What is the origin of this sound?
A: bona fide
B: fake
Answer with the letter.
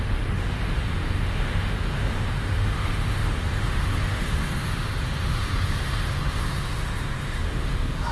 B